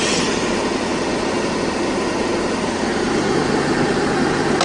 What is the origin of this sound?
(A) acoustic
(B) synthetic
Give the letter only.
A